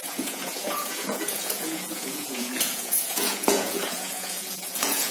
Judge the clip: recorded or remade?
remade